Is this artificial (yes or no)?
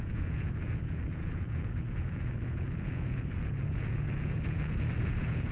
yes